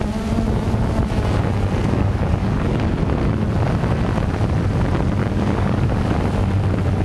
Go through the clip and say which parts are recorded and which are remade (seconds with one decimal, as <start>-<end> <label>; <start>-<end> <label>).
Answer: 0.0-1.8 recorded; 1.8-2.9 remade; 2.9-5.2 recorded; 5.2-6.2 remade; 6.2-7.0 recorded